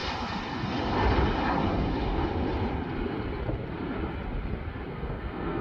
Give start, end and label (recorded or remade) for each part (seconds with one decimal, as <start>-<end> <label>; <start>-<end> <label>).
0.0-4.9 recorded; 4.9-5.6 remade